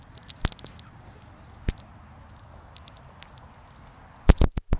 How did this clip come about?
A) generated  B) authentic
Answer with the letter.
B